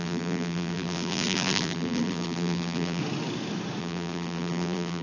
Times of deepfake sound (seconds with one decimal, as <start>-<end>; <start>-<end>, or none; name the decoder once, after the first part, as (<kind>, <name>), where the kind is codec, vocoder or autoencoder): 0.0-3.0 (vocoder, BigVGAN v2); 3.8-5.0